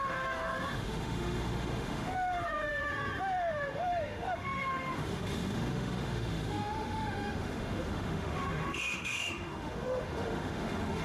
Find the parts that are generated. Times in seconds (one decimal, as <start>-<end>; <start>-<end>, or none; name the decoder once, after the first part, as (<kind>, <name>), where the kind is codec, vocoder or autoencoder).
0.0-11.0 (autoencoder, DAC-VAE)